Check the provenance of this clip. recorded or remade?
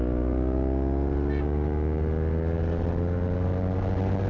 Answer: recorded